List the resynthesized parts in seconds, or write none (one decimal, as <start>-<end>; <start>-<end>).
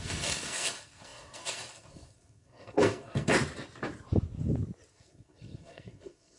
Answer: 0.0-3.3; 4.9-6.4